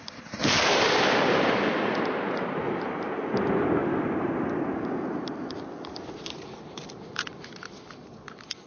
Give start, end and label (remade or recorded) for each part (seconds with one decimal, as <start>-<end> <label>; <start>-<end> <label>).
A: 0.0-8.7 recorded